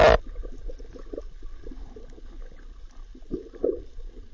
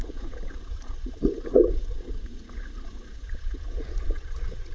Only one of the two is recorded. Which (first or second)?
first